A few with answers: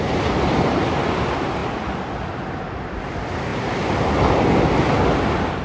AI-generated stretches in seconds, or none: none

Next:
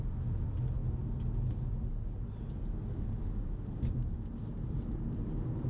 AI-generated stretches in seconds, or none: none

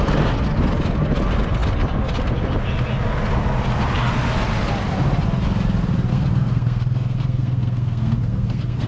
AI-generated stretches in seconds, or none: 6.1-8.9 (codec, SNAC)